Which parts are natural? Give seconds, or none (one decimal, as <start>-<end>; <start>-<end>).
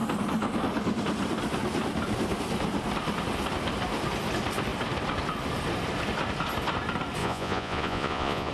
0.0-7.2